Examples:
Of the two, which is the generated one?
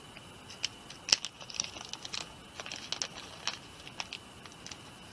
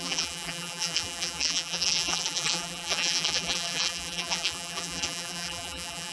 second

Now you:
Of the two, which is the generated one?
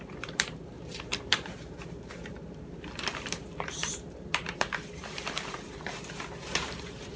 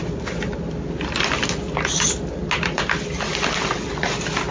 first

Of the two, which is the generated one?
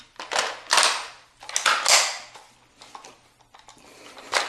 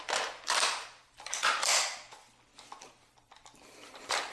second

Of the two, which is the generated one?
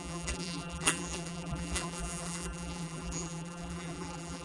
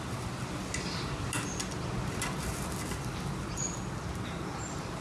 first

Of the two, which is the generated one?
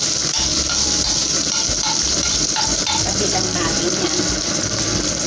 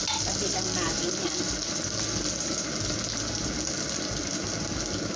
first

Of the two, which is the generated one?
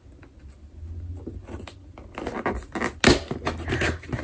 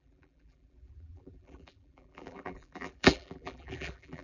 second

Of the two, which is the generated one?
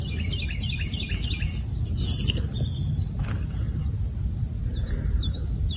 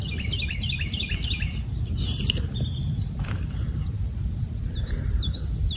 second